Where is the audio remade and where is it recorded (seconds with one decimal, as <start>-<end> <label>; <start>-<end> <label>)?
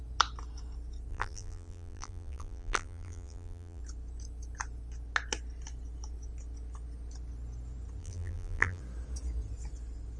0.0-1.1 recorded; 1.1-3.8 remade; 3.8-8.0 recorded; 8.0-8.8 remade; 8.8-10.2 recorded